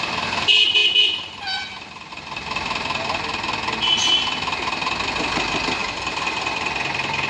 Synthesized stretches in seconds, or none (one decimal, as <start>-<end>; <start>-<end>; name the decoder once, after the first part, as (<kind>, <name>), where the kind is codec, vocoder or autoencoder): none